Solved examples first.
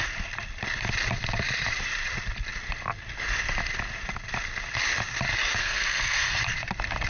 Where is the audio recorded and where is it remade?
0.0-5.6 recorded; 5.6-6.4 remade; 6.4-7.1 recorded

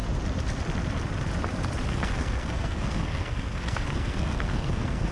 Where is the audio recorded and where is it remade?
0.0-1.9 recorded; 1.9-5.1 remade